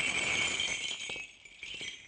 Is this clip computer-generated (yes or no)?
no